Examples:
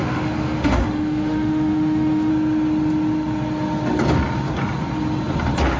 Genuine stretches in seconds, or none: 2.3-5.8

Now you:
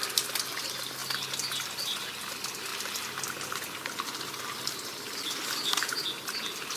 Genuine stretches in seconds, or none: 0.0-6.8

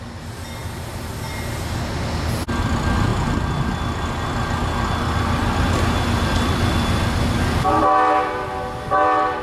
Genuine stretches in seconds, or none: 0.0-9.4

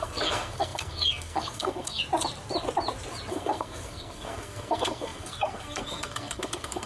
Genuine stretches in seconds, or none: 2.0-3.3

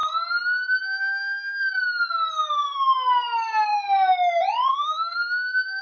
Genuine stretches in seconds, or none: 0.0-4.7

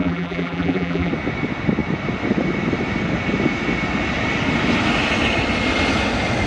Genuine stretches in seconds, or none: 1.1-6.5

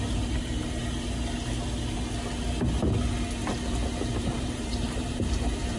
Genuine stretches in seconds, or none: 0.8-4.1

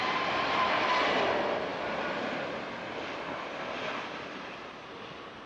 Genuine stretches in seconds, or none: none